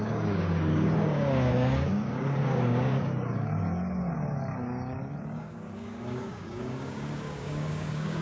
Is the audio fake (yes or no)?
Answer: yes